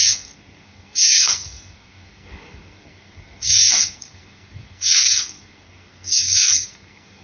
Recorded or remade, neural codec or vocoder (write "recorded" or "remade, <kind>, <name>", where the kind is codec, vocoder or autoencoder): remade, codec, SNAC